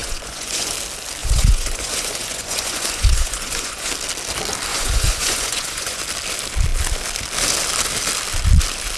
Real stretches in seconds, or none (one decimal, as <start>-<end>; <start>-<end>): 0.7-1.2; 3.9-4.7; 6.0-9.0